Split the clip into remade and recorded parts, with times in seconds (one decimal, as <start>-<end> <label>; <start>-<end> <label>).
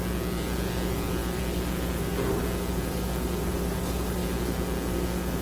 0.0-5.4 recorded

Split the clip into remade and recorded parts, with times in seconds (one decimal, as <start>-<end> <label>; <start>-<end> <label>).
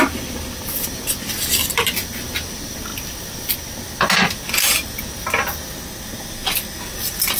0.0-7.4 recorded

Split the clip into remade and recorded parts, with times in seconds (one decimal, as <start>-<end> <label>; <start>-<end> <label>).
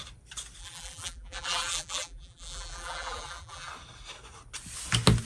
0.0-0.6 recorded; 0.6-3.7 remade; 3.7-5.2 recorded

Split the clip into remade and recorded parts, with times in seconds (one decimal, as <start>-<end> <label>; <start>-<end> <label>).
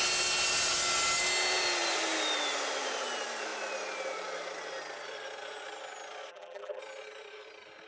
0.0-6.3 recorded; 6.3-6.8 remade; 6.8-7.9 recorded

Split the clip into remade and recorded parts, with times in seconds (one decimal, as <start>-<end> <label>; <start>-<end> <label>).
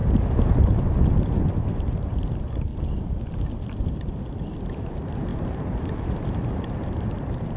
0.0-2.7 remade; 2.7-4.6 recorded; 4.6-7.6 remade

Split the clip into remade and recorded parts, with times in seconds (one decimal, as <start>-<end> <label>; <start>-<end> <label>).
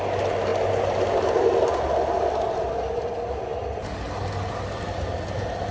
0.0-5.7 recorded